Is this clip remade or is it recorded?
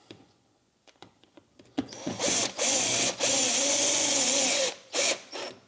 remade